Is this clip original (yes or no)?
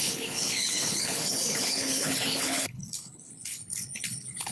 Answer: no